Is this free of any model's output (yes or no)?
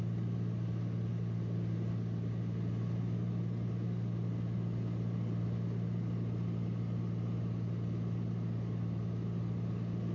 yes